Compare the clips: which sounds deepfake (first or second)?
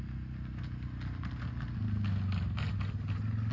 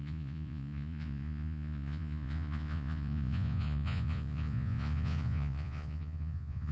second